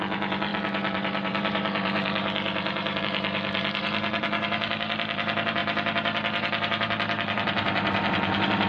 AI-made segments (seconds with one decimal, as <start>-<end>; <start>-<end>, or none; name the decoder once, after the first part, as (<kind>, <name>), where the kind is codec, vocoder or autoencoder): 0.0-8.7 (vocoder, BigVGAN v2)

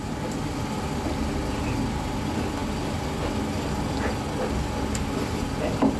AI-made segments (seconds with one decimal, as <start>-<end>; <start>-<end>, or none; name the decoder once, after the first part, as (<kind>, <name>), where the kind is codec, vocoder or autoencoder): none

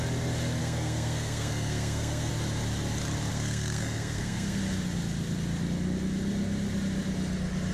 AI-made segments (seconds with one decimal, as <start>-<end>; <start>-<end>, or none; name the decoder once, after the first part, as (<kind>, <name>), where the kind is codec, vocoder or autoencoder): 0.6-2.3 (codec, SNAC); 3.3-4.6

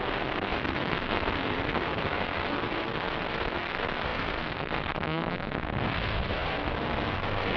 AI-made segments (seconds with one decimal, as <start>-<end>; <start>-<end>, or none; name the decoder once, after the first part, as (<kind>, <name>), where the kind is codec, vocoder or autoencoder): 0.0-7.6 (codec, SNAC)

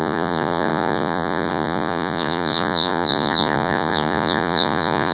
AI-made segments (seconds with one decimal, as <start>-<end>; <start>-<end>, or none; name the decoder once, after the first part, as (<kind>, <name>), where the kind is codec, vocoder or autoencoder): 0.0-5.1 (vocoder, Vocos)

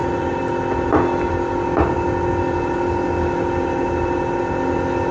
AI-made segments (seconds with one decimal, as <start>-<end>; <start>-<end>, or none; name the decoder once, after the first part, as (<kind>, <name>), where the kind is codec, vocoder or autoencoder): none